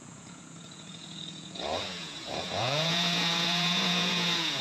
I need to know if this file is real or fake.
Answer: fake